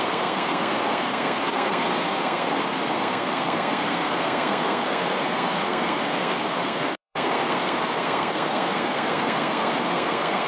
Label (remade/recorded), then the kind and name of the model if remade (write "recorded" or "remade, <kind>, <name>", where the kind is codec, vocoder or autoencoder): remade, codec, SNAC